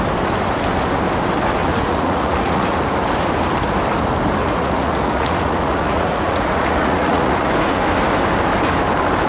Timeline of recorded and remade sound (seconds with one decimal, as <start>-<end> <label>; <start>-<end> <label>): 0.0-1.6 recorded; 1.6-2.8 remade; 2.8-4.4 recorded; 4.4-7.5 remade; 7.5-9.3 recorded